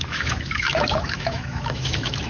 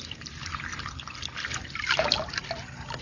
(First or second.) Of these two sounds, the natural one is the second